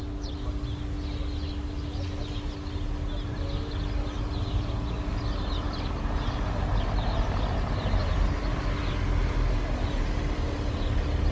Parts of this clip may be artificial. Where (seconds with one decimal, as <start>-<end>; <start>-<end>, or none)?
none